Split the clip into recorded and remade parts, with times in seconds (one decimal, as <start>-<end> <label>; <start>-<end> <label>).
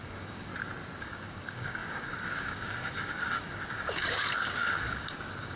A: 0.0-0.5 remade; 0.5-1.0 recorded; 1.0-5.6 remade